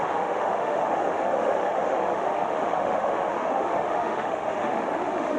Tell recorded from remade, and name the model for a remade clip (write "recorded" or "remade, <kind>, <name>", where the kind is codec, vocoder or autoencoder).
remade, autoencoder, DAC-VAE